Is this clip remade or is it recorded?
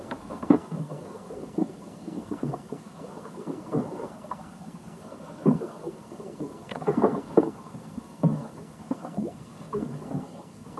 remade